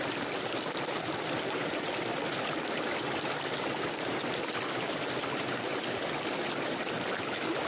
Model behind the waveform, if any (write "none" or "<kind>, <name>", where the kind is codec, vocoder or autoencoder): none